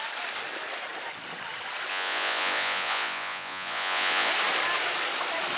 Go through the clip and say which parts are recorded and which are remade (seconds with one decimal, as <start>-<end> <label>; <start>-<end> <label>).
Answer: 0.0-1.9 recorded; 1.9-4.3 remade; 4.3-5.6 recorded